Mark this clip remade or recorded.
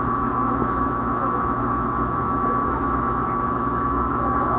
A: remade